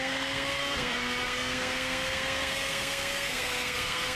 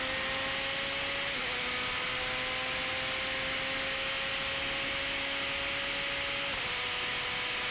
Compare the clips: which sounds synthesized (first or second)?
first